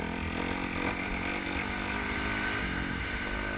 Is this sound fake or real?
real